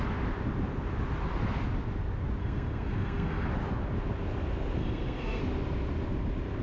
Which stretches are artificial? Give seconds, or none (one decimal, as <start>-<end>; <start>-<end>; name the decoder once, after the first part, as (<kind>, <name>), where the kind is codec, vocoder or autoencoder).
2.4-3.5 (codec, SNAC); 4.8-5.4